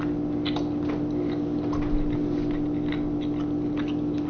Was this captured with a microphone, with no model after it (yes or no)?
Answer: yes